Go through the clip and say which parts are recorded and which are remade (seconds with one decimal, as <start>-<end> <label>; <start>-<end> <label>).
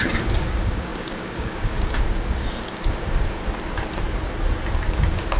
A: 0.0-3.4 remade; 3.4-4.7 recorded; 4.7-5.4 remade